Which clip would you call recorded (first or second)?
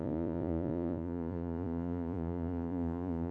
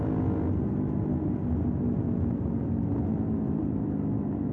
second